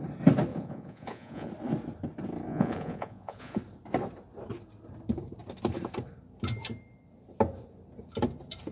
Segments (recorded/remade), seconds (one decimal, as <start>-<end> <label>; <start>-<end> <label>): 0.0-0.5 recorded; 0.5-1.5 remade; 1.5-2.5 recorded; 2.5-3.6 remade; 3.6-8.7 recorded